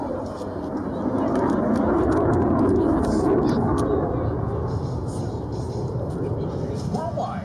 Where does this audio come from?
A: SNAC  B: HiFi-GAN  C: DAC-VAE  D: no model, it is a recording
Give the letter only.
D